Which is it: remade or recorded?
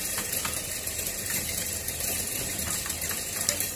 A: remade